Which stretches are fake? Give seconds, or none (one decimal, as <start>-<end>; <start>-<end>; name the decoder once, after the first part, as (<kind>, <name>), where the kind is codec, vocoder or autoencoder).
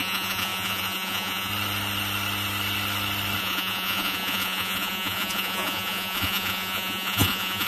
0.0-1.5 (vocoder, Vocos); 3.4-7.7